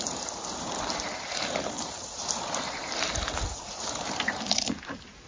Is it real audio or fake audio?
fake